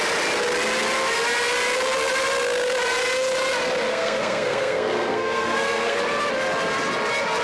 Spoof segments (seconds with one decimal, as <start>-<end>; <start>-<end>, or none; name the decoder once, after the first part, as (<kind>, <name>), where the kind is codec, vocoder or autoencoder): 3.9-6.0 (codec, SNAC)